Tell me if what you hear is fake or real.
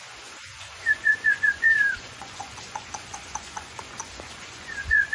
fake